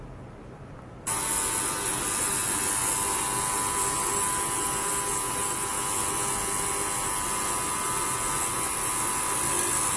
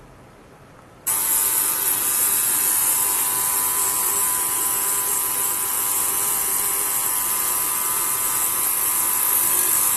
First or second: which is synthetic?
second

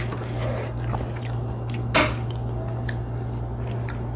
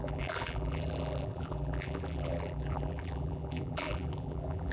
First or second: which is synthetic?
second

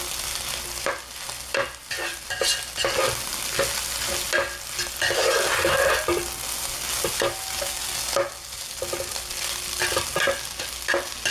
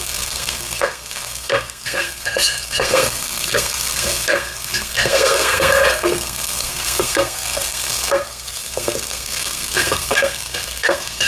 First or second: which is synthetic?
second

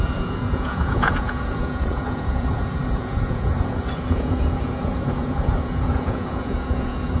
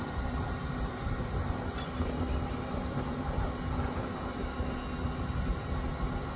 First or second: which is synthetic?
first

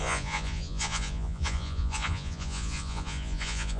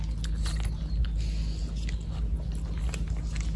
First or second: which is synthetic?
first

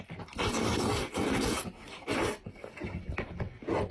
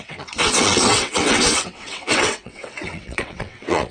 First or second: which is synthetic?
second